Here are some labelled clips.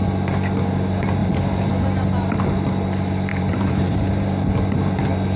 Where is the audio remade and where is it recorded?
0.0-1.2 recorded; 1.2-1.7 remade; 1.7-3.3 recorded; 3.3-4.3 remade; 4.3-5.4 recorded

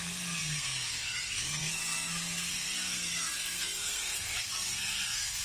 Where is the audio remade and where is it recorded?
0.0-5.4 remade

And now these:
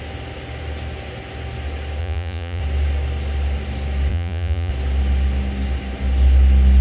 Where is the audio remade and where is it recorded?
0.0-2.0 recorded; 2.0-2.6 remade; 2.6-4.1 recorded; 4.1-4.7 remade; 4.7-6.8 recorded

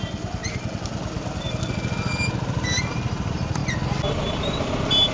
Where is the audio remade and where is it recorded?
0.0-0.4 remade; 0.4-2.8 recorded; 2.8-3.6 remade; 3.6-4.2 recorded; 4.2-5.1 remade

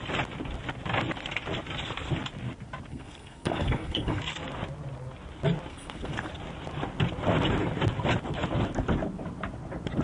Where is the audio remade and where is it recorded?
0.0-2.9 recorded; 2.9-4.2 remade; 4.2-5.7 recorded; 5.7-6.3 remade; 6.3-10.0 recorded

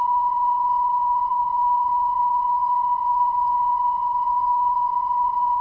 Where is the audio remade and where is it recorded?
0.0-5.6 remade